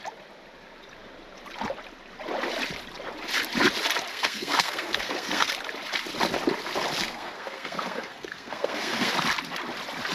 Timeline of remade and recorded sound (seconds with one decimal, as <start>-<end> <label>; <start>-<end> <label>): 0.0-4.1 recorded; 4.1-5.5 remade; 5.5-7.0 recorded; 7.0-9.1 remade; 9.1-10.1 recorded